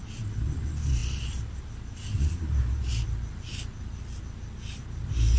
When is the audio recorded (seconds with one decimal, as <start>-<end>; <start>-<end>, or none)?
0.0-5.4